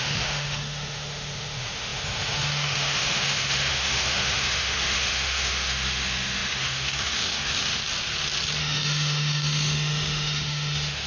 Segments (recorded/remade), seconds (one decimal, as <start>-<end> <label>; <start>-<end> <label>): 0.0-7.8 remade; 7.8-8.6 recorded; 8.6-11.1 remade